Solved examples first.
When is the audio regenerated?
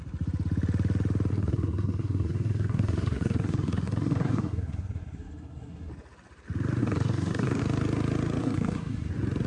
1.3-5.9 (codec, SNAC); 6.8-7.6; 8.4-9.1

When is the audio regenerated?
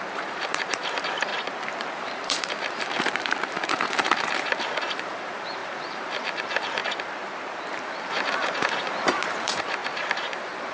0.0-1.3 (vocoder, BigVGAN v2); 2.0-6.8; 7.8-10.7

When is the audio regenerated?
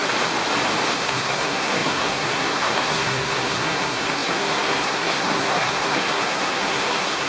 0.9-7.3 (codec, SNAC)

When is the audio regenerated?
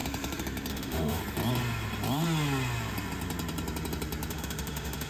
0.7-1.2 (autoencoder, DAC-VAE); 4.3-5.1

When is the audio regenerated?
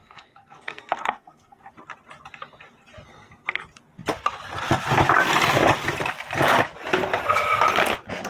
0.0-1.7 (codec, SNAC); 3.1-3.6